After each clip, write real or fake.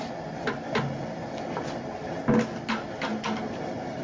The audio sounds real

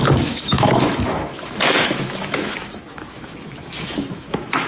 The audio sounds fake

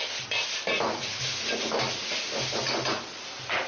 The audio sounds real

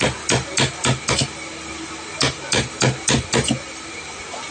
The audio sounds real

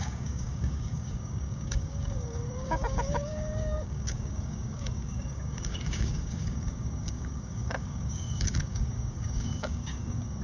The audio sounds fake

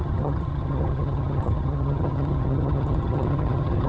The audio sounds fake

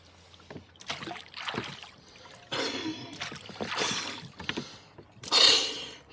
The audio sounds real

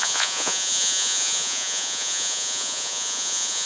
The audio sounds fake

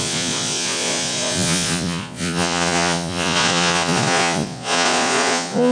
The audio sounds fake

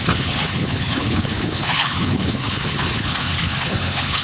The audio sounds fake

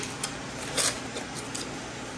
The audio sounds real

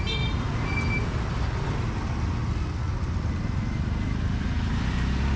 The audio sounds real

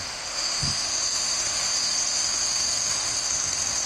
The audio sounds fake